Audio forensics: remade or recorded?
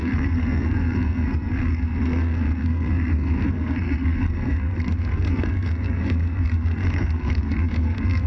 remade